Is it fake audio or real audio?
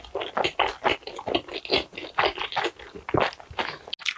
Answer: real